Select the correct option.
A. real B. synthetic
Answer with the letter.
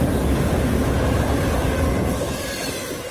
B